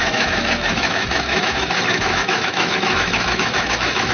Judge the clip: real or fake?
fake